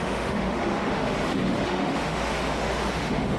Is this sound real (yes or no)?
no